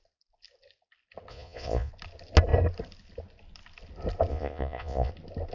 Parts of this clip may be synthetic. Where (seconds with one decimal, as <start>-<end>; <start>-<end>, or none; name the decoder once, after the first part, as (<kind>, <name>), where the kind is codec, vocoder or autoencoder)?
1.3-1.9 (vocoder, Vocos); 4.3-5.1